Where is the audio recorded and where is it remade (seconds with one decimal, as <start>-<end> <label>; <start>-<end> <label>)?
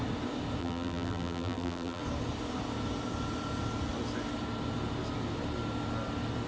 0.0-0.6 recorded; 0.6-2.0 remade; 2.0-6.5 recorded